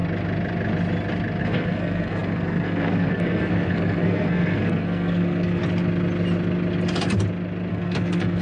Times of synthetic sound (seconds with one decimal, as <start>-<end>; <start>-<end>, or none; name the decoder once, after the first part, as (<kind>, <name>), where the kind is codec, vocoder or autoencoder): 1.4-5.6 (codec, SNAC); 7.7-8.4